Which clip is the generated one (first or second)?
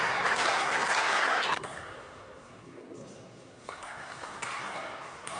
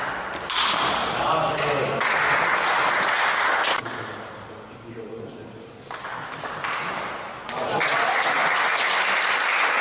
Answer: first